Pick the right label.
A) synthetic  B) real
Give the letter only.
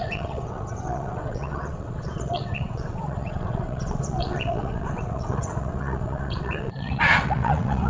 A